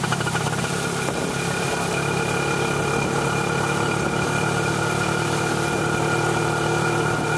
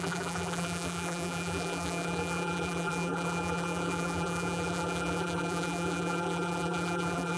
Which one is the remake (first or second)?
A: second